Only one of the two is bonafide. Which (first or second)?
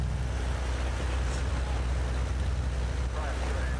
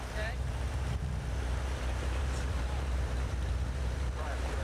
first